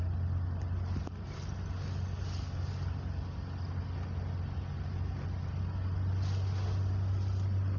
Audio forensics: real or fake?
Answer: real